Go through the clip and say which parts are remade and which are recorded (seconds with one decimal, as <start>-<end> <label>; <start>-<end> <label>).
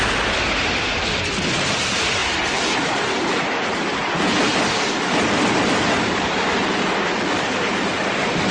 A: 0.0-2.2 remade; 2.2-3.1 recorded; 3.1-8.5 remade